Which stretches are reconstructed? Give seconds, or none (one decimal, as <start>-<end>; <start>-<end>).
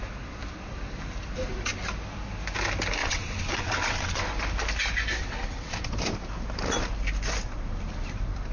3.0-4.2; 5.2-5.7